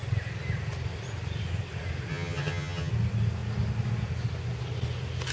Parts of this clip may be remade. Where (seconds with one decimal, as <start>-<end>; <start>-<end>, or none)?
2.1-2.9